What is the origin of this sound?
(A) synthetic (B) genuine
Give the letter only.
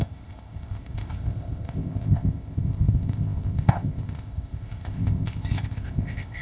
A